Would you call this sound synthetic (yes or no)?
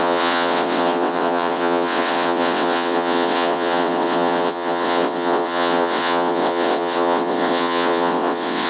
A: yes